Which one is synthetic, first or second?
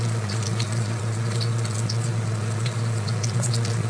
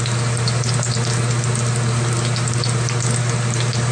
first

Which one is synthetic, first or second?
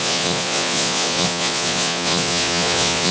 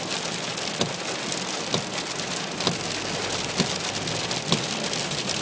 first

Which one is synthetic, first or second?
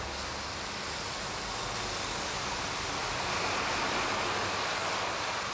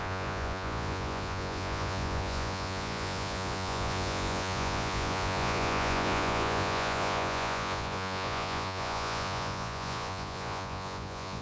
second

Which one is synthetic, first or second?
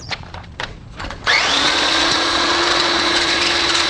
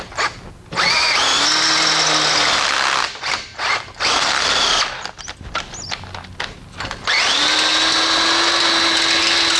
first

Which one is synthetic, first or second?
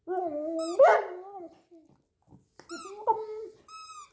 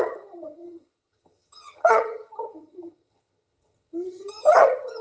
second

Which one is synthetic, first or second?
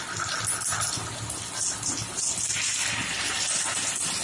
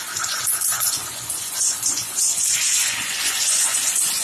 second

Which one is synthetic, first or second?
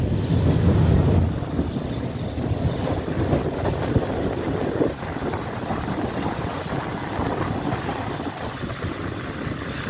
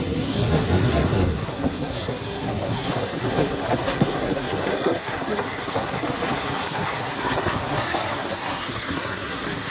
second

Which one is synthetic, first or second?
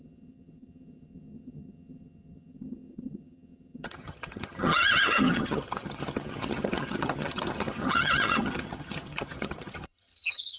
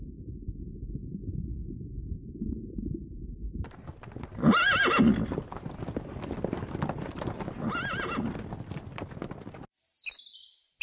first